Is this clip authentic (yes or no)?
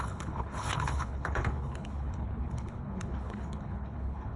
no